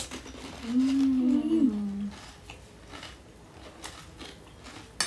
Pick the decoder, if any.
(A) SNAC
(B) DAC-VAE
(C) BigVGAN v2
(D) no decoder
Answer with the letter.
D